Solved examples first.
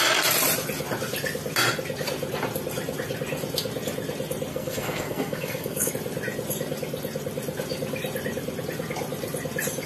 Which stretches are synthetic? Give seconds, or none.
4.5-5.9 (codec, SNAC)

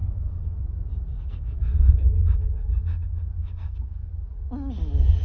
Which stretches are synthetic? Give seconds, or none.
0.0-0.6 (codec, SNAC); 1.1-4.1

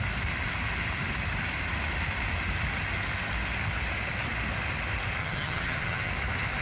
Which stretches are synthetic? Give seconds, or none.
5.2-6.1 (vocoder, HiFi-GAN)

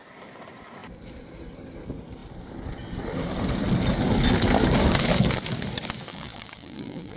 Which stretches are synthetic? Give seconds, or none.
6.1-7.2 (vocoder, WaveNeXt)

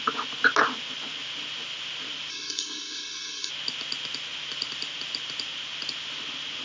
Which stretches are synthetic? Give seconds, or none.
2.3-3.5 (codec, SNAC)

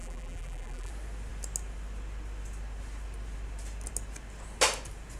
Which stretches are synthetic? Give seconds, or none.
0.0-0.9 (vocoder, BigVGAN v2)

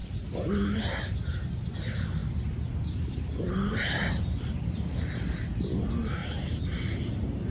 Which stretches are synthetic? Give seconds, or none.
0.0-1.0 (vocoder, BigVGAN v2); 2.2-5.0; 6.2-7.5

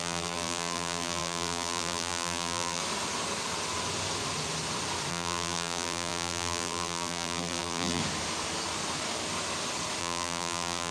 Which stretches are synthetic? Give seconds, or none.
0.0-2.8 (vocoder, BigVGAN v2); 5.1-8.0; 10.0-10.9